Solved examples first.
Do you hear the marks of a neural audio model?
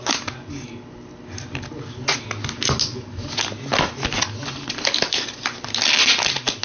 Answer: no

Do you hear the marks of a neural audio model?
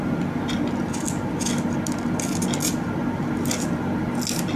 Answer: no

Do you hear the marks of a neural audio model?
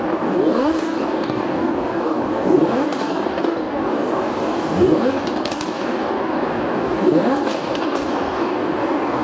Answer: yes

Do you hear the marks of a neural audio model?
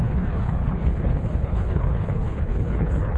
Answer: yes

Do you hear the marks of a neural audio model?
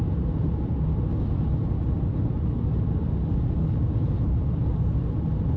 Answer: no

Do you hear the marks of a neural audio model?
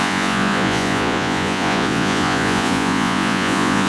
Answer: yes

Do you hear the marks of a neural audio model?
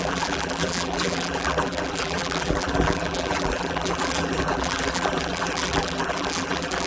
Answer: yes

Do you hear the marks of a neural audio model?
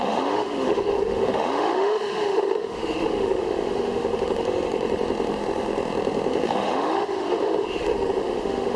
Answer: yes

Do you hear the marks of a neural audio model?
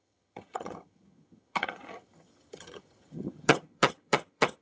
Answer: yes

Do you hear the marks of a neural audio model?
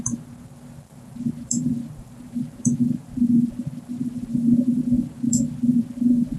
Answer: yes